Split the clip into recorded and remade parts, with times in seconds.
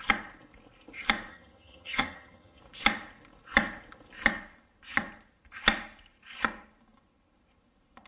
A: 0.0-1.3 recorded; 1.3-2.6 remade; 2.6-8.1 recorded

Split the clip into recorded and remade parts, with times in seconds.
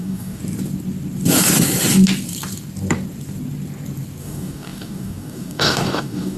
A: 0.0-0.4 remade; 0.4-4.2 recorded; 4.2-6.4 remade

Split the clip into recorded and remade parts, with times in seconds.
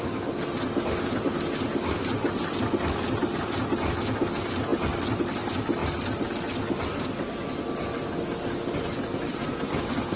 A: 0.0-10.2 recorded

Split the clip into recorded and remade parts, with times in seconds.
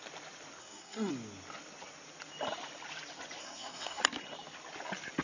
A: 0.0-0.6 recorded; 0.6-1.1 remade; 1.1-3.4 recorded; 3.4-4.0 remade; 4.0-5.2 recorded